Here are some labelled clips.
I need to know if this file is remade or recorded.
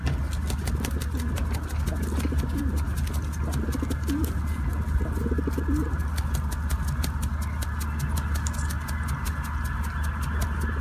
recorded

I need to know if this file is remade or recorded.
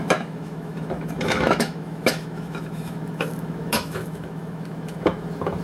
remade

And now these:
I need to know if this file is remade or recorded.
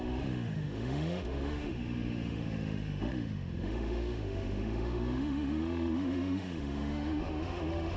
remade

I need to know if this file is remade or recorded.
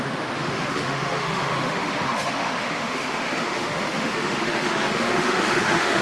remade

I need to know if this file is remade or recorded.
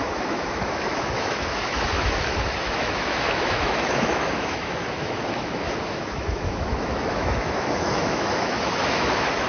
remade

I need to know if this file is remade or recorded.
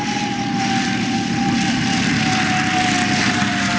recorded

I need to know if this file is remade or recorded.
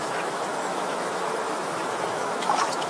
remade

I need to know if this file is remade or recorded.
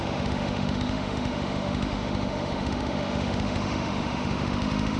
remade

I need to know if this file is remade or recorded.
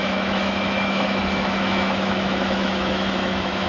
remade